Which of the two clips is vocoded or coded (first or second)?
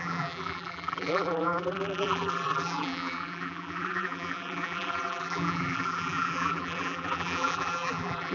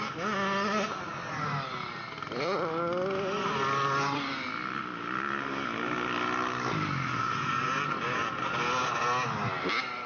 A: first